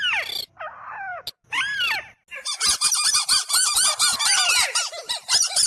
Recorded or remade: recorded